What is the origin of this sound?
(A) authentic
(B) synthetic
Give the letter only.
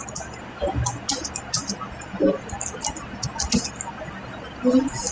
A